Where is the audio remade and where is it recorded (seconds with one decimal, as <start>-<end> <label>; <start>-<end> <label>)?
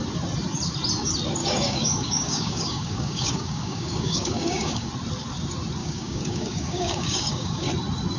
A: 0.0-1.4 recorded; 1.4-4.9 remade; 4.9-5.8 recorded; 5.8-7.7 remade; 7.7-8.2 recorded